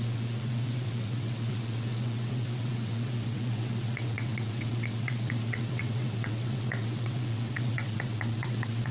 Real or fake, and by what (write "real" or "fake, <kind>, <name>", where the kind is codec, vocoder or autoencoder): fake, vocoder, WaveNeXt